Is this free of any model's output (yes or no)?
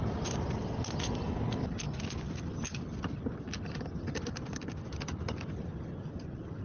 yes